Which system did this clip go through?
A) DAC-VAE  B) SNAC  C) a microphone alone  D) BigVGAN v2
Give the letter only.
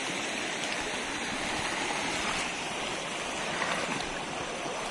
D